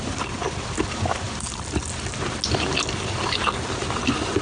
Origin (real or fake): real